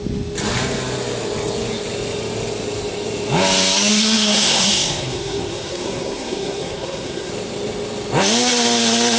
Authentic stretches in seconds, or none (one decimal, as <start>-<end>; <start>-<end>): 0.0-3.9; 7.3-9.2